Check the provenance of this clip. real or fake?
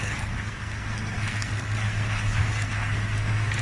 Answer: fake